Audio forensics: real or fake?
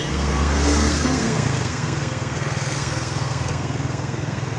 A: fake